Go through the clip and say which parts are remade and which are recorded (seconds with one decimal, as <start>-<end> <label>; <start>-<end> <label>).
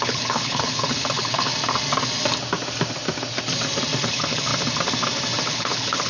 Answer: 0.0-1.5 remade; 1.5-4.1 recorded; 4.1-4.5 remade; 4.5-5.5 recorded; 5.5-6.1 remade